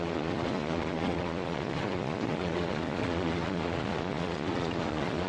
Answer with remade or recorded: remade